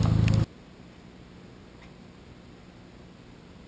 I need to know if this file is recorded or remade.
recorded